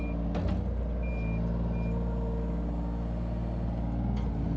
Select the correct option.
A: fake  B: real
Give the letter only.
B